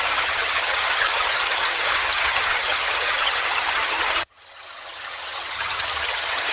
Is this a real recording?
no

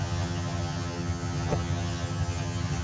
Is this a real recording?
no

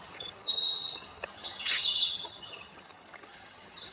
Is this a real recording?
no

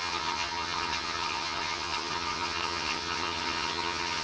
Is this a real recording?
no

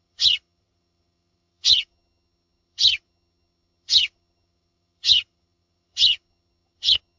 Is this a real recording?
no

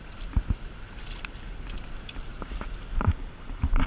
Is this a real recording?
yes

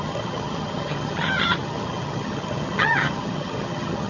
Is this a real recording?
no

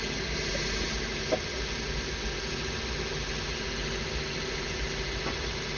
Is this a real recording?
yes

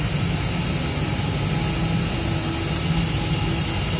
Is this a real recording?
yes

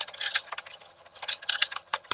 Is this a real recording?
no